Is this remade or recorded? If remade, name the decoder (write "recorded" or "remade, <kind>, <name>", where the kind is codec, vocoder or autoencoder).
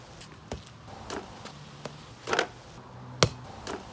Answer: recorded